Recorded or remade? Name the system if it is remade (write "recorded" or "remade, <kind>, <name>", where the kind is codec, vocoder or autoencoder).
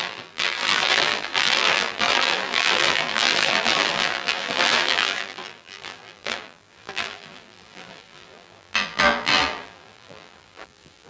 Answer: remade, vocoder, BigVGAN v2